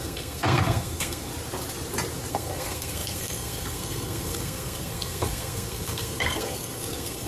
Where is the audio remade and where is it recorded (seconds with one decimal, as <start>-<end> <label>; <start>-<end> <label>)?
0.0-1.3 remade; 1.3-2.3 recorded; 2.3-7.3 remade